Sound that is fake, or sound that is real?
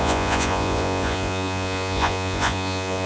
fake